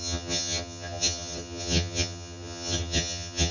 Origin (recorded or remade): remade